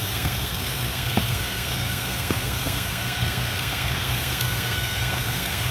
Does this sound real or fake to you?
fake